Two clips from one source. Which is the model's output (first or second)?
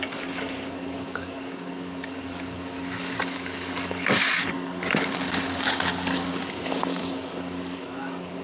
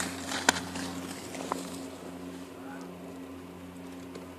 first